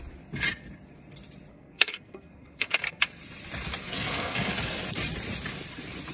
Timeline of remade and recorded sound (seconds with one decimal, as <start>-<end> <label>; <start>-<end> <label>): 0.0-1.5 recorded; 1.5-3.0 remade; 3.0-3.8 recorded; 3.8-4.5 remade; 4.5-6.1 recorded